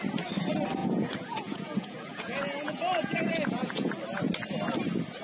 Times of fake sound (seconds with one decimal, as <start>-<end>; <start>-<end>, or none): 0.8-3.9